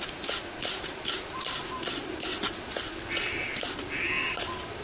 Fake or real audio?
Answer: real